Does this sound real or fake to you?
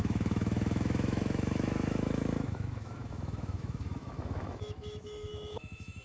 fake